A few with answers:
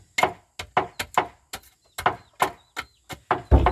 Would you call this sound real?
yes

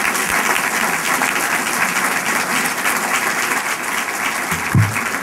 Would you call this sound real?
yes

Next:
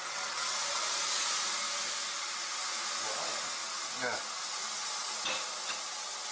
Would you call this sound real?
yes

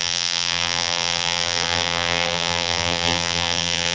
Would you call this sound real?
no